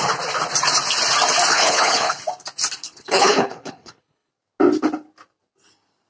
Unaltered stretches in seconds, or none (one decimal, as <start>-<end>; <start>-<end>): 0.0-1.5; 2.2-2.8; 4.3-6.1